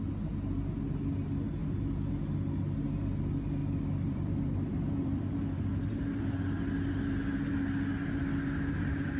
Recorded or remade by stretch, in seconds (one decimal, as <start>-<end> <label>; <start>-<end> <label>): 0.0-1.6 recorded; 1.6-2.1 remade; 2.1-3.6 recorded; 3.6-6.3 remade; 6.3-9.2 recorded